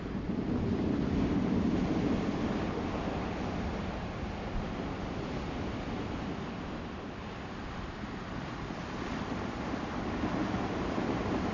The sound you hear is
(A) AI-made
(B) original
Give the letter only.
B